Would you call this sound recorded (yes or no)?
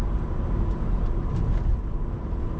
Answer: yes